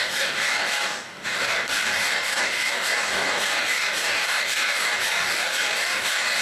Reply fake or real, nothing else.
fake